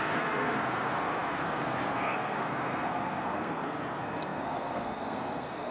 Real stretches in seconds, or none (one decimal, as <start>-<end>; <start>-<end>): none